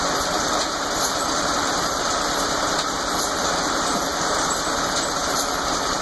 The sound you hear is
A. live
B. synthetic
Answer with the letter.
B